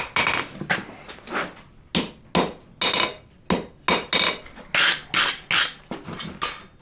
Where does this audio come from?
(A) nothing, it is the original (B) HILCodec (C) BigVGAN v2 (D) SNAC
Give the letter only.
A